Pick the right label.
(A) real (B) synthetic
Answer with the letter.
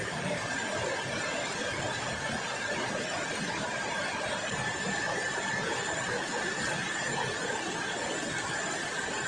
A